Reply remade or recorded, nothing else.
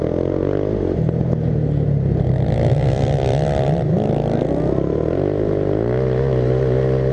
recorded